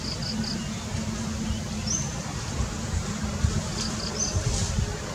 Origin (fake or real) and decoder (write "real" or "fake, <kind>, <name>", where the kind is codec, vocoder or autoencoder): real